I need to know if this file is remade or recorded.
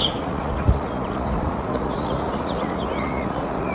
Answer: remade